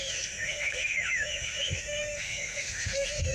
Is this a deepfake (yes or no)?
yes